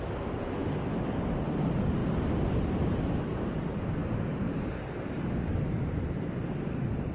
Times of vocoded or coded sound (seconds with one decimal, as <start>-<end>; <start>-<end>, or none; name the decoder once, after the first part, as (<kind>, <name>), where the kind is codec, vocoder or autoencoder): none